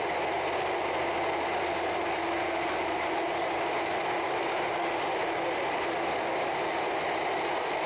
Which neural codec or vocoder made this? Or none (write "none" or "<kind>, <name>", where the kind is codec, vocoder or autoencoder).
none